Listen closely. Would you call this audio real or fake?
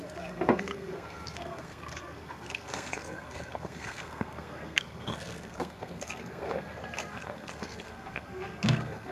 fake